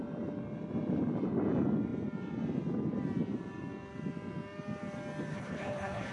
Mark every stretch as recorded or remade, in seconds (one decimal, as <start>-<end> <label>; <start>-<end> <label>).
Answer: 0.0-5.3 recorded; 5.3-6.1 remade